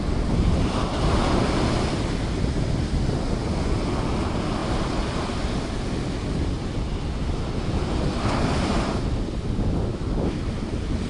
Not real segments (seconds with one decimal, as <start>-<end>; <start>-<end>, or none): 9.9-10.5